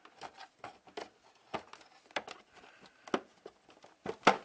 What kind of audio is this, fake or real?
real